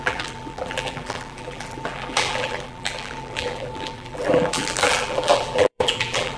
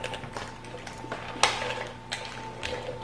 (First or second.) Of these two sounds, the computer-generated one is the first